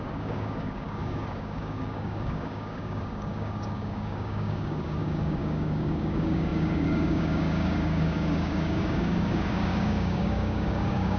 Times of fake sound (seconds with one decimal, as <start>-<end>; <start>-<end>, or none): 0.0-11.2